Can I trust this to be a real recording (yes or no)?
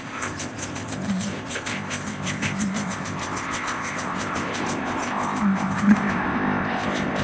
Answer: no